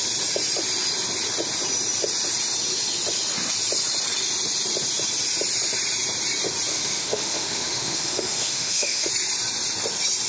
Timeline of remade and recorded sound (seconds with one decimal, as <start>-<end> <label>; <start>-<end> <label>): 0.0-6.7 recorded; 6.7-9.1 remade; 9.1-10.3 recorded